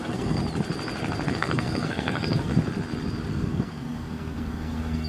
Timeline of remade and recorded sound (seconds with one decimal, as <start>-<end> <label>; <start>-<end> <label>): 0.0-0.4 remade; 0.4-1.3 recorded; 1.3-2.5 remade; 2.5-3.3 recorded; 3.3-5.1 remade